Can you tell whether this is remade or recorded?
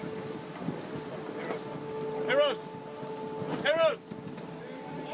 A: recorded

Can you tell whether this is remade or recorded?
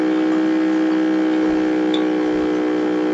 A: recorded